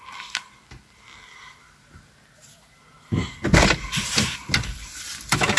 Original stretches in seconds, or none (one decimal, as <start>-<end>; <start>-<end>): 0.0-5.6